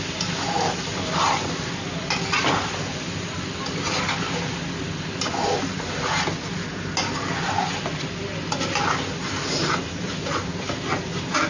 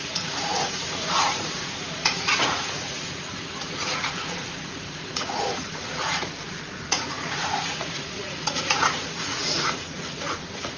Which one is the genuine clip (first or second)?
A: first